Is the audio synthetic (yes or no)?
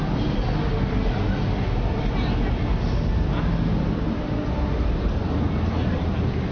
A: no